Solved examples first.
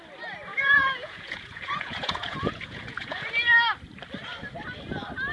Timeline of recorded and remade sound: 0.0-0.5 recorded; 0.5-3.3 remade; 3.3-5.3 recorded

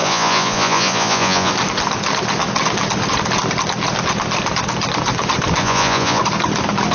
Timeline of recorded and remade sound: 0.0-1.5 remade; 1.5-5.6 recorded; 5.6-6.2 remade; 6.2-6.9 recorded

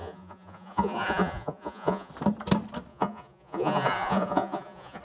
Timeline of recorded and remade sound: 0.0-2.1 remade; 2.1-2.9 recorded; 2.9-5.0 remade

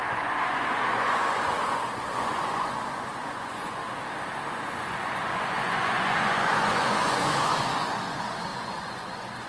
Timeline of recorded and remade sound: 0.0-3.8 remade; 3.8-4.5 recorded; 4.5-9.5 remade

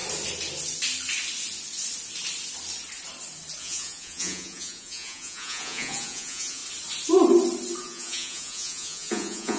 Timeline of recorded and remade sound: 0.0-3.6 recorded; 3.6-6.6 remade; 6.6-7.8 recorded; 7.8-9.6 remade